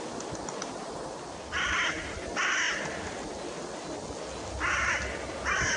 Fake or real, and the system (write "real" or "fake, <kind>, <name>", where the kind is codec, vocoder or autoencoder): real